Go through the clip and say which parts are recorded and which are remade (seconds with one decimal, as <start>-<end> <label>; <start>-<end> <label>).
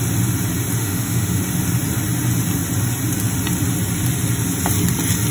0.0-0.8 recorded; 0.8-1.4 remade; 1.4-5.3 recorded